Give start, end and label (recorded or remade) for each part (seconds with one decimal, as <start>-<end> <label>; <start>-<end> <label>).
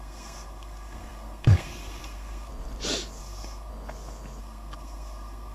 0.0-2.5 remade; 2.5-3.2 recorded; 3.2-3.7 remade; 3.7-4.4 recorded; 4.4-5.5 remade